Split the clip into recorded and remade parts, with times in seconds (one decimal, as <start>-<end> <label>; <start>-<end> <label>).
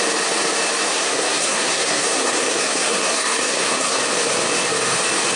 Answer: 0.0-0.9 recorded; 0.9-4.0 remade; 4.0-5.4 recorded